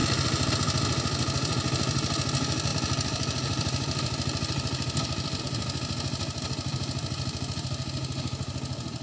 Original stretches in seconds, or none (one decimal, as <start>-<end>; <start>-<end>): 0.5-2.7; 5.4-9.0

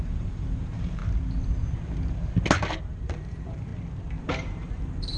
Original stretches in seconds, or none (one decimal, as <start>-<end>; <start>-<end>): 1.0-2.8; 3.7-4.2

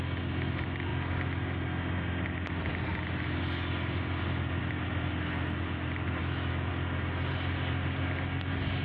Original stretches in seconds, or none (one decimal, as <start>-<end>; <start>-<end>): 0.0-6.2; 6.7-8.8

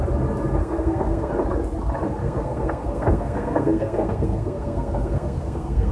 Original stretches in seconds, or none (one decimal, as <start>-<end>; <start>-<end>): 0.0-0.6; 1.3-2.2

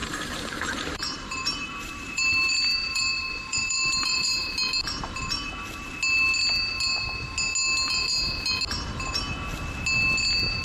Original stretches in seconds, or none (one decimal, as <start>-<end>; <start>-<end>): 4.5-10.6